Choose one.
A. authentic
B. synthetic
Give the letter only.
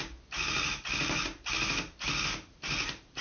A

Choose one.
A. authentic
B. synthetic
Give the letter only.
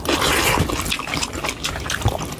A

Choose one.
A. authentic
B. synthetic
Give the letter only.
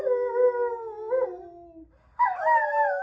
A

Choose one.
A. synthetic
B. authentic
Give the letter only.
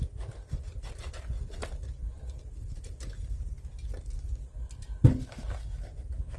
B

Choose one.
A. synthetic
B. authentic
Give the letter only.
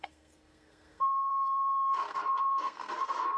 A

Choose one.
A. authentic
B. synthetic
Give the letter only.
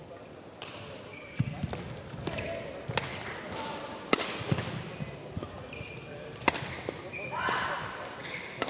A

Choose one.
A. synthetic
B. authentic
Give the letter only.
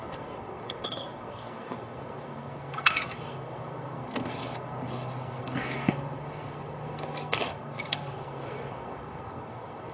A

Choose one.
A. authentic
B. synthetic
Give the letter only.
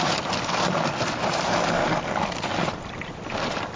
A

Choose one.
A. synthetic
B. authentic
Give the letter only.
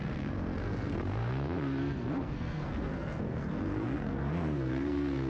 A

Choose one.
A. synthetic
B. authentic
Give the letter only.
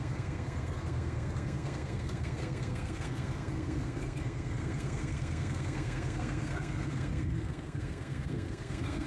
A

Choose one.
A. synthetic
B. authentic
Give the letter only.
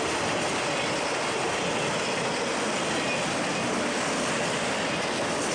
B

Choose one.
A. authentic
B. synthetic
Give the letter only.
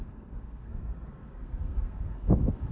B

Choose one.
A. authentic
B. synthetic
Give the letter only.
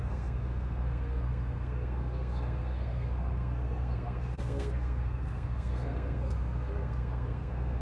B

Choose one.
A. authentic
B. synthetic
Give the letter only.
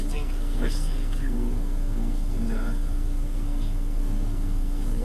B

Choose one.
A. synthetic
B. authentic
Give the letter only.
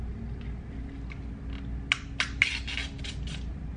B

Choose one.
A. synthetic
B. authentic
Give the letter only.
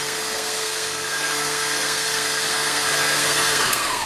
A